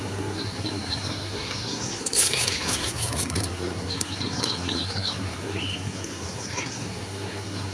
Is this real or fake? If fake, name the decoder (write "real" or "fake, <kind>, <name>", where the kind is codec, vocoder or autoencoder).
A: fake, codec, SNAC